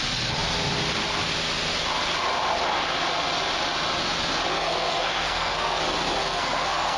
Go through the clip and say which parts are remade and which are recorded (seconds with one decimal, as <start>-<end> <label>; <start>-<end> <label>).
0.0-4.5 recorded; 4.5-5.8 remade; 5.8-6.2 recorded; 6.2-7.0 remade